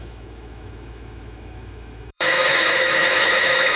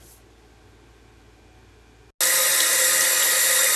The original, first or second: second